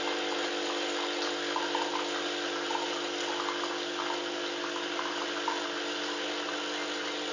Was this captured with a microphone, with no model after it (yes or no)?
yes